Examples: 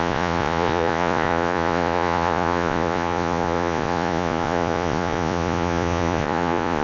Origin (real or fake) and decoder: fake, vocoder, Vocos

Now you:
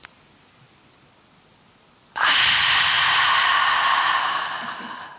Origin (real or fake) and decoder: real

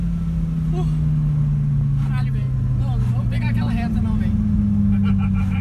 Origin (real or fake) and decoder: real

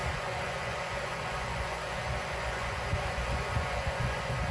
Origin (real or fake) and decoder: fake, vocoder, Vocos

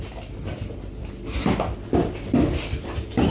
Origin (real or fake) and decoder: real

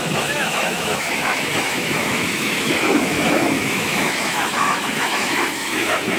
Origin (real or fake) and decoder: fake, autoencoder, DAC-VAE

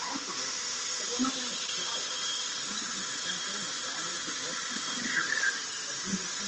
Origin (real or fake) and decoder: fake, vocoder, BigVGAN v2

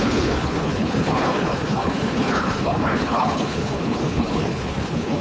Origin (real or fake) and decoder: fake, codec, HILCodec